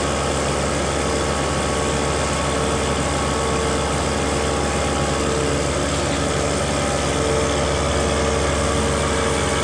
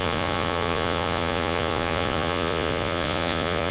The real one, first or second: first